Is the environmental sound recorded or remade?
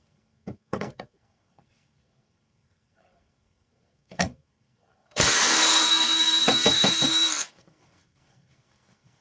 remade